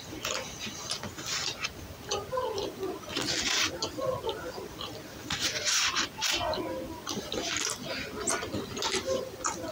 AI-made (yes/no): no